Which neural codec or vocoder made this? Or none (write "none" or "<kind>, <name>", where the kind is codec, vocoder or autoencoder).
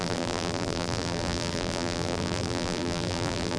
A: vocoder, BigVGAN v2